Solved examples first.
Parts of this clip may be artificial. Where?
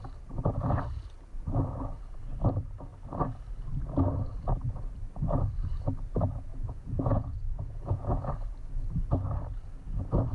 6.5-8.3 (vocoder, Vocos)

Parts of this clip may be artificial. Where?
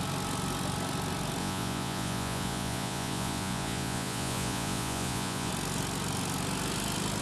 1.4-5.5 (vocoder, Vocos)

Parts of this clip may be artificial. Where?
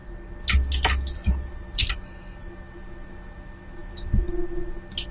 none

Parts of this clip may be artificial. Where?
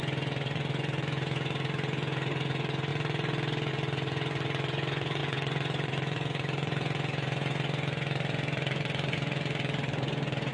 0.0-2.9 (vocoder, Vocos); 3.7-10.5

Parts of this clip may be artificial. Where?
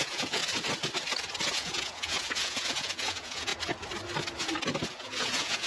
0.0-0.4 (vocoder, Vocos); 1.5-3.5; 5.0-5.7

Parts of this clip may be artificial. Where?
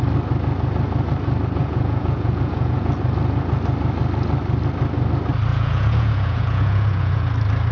1.6-2.9 (vocoder, Vocos); 5.5-7.3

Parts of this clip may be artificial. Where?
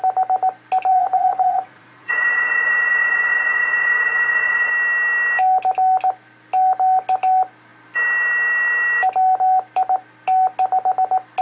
0.9-4.7 (vocoder, Vocos)